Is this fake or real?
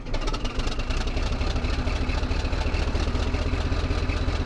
real